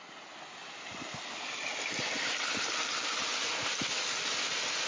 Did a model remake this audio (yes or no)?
no